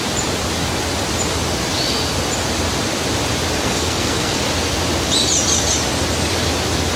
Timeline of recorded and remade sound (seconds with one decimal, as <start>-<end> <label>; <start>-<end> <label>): 0.0-3.6 recorded; 3.6-4.4 remade; 4.4-7.0 recorded